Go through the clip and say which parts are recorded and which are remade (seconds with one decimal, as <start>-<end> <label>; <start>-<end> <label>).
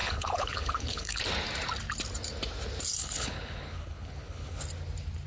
0.0-1.2 remade; 1.2-3.0 recorded; 3.0-4.6 remade; 4.6-5.3 recorded